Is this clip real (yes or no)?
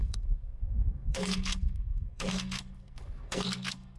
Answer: no